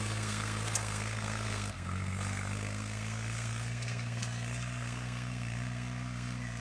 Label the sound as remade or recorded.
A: remade